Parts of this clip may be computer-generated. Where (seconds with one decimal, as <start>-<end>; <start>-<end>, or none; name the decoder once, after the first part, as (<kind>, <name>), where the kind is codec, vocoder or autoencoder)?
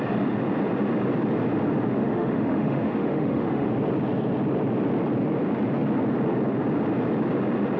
2.0-3.7 (autoencoder, DAC-VAE)